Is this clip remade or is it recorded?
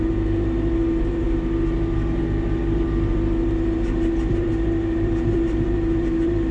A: remade